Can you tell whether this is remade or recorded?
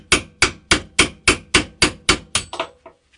recorded